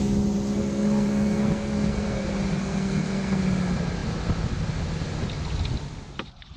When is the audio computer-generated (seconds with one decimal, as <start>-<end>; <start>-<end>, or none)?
0.6-2.2; 2.6-3.4